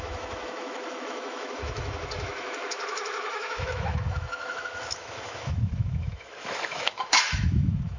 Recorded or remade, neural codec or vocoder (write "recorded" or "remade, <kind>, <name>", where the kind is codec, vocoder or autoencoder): remade, autoencoder, DAC-VAE